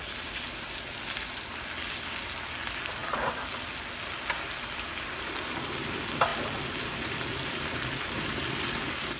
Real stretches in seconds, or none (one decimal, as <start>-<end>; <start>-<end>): 0.0-9.2